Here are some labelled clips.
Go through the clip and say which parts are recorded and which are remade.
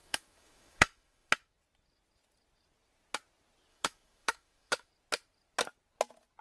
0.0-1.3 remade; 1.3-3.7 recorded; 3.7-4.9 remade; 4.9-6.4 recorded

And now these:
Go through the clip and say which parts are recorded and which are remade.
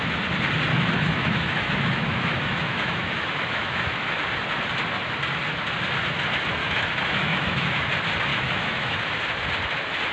0.0-0.7 recorded; 0.7-4.2 remade; 4.2-6.6 recorded; 6.6-7.9 remade; 7.9-8.3 recorded; 8.3-9.2 remade; 9.2-10.1 recorded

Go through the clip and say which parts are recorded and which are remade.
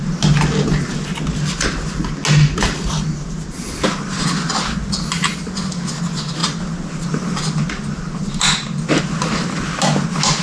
0.0-10.4 recorded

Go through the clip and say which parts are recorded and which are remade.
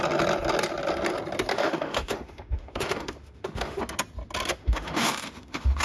0.0-1.5 recorded; 1.5-3.8 remade; 3.8-4.5 recorded; 4.5-5.8 remade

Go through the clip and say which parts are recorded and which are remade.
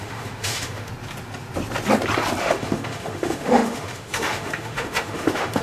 0.0-0.9 remade; 0.9-2.4 recorded; 2.4-5.6 remade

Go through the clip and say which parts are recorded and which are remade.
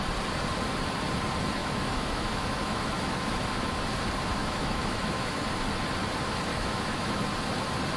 0.0-1.6 recorded; 1.6-3.7 remade; 3.7-4.3 recorded; 4.3-5.4 remade; 5.4-6.5 recorded; 6.5-7.2 remade; 7.2-8.0 recorded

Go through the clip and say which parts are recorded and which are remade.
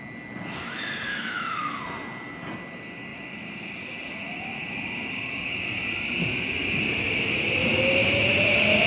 0.0-1.1 recorded; 1.1-1.8 remade; 1.8-8.9 recorded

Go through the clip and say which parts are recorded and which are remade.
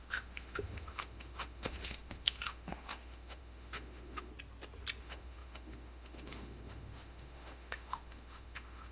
0.0-4.3 remade; 4.3-5.0 recorded; 5.0-8.9 remade